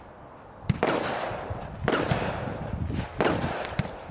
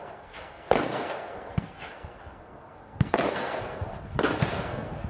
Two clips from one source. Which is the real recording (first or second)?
first